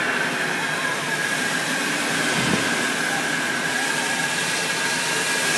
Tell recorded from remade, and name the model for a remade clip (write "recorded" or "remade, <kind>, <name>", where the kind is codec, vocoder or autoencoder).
recorded